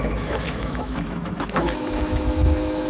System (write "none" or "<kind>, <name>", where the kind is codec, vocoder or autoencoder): autoencoder, DAC-VAE